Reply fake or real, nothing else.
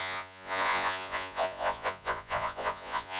fake